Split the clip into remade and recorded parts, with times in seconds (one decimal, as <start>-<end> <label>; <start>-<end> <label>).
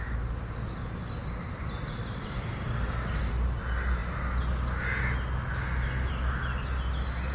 0.0-7.3 recorded